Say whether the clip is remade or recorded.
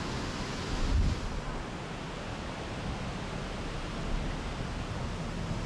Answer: recorded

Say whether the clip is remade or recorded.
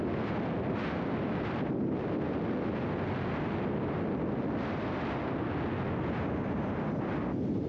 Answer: recorded